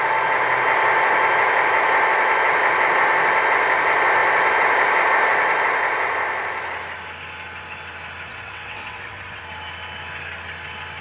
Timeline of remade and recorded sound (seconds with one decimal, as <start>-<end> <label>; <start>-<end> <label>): 0.0-8.3 recorded; 8.3-9.4 remade; 9.4-11.0 recorded